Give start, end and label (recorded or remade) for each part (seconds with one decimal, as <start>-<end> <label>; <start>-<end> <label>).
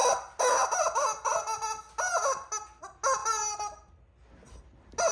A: 0.0-5.1 recorded